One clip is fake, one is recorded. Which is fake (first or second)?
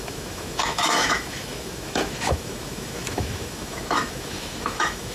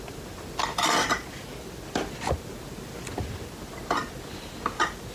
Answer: first